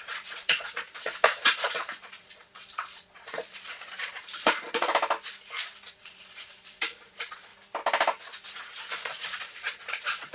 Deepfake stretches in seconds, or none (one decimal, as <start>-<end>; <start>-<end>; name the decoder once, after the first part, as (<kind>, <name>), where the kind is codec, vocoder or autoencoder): 0.0-4.9 (vocoder, Vocos); 5.9-7.5; 8.9-10.3

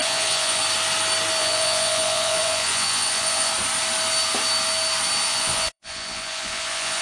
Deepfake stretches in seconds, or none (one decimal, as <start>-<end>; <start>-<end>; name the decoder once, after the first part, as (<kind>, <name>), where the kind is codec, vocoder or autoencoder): 0.0-0.6 (vocoder, Vocos); 1.4-3.5; 5.3-7.0